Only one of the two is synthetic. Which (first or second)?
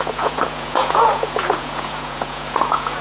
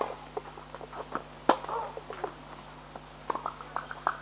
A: first